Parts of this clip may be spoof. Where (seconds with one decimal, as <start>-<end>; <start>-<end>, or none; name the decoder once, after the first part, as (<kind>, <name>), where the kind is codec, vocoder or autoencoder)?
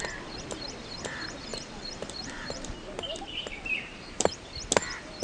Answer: 1.5-4.6 (vocoder, BigVGAN v2)